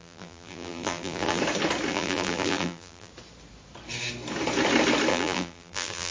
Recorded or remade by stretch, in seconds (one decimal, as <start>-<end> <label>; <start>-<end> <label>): 0.0-1.4 remade; 1.4-1.9 recorded; 1.9-3.1 remade; 3.1-5.1 recorded; 5.1-6.1 remade